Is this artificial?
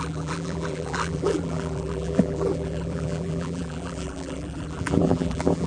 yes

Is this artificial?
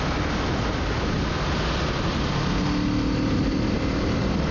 no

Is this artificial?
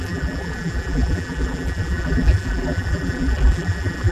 yes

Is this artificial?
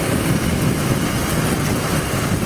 no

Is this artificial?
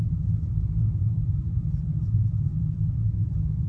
yes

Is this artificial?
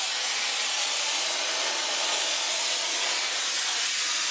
no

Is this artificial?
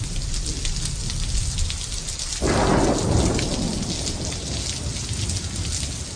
no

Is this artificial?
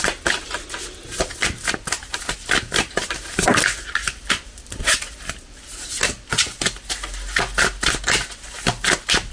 no